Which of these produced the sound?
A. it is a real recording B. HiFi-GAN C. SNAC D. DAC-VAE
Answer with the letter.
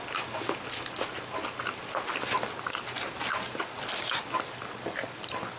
A